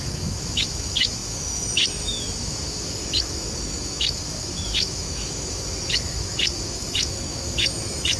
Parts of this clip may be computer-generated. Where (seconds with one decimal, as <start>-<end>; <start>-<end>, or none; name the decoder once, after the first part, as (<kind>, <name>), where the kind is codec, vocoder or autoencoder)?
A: 0.0-8.2 (autoencoder, DAC-VAE)